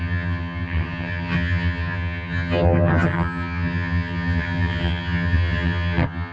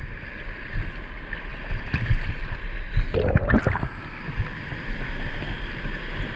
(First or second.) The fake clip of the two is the first